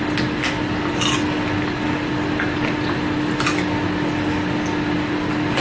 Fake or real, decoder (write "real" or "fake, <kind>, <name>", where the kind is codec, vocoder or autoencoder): real